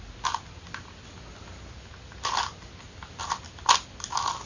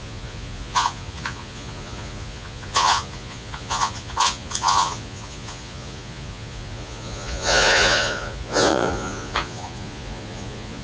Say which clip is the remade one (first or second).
second